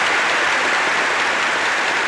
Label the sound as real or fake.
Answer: real